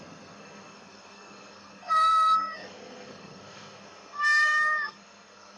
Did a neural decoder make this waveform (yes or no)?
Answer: yes